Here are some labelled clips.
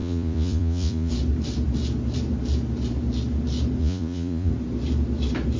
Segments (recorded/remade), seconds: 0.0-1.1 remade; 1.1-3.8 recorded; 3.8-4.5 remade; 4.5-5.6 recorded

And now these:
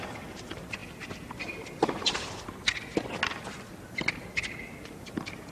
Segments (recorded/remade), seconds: 0.0-5.5 recorded

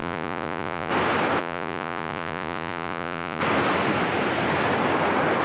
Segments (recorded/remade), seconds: 0.0-0.9 remade; 0.9-1.4 recorded; 1.4-3.4 remade; 3.4-5.4 recorded

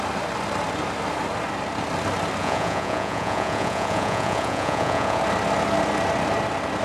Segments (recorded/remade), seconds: 0.0-2.4 recorded; 2.4-5.2 remade; 5.2-6.8 recorded

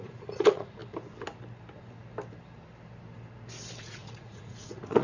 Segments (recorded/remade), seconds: 0.0-0.8 remade; 0.8-3.8 recorded; 3.8-5.0 remade